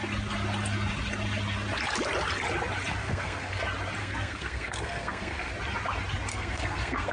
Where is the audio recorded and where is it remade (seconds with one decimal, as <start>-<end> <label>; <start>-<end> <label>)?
0.0-3.0 recorded; 3.0-3.6 remade; 3.6-4.0 recorded; 4.0-5.5 remade; 5.5-6.3 recorded; 6.3-7.1 remade